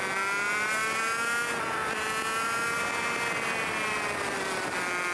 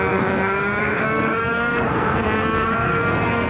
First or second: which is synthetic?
second